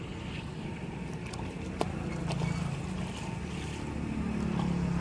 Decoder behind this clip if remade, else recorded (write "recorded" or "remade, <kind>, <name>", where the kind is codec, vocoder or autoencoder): recorded